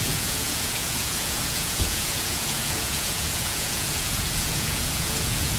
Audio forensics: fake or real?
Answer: fake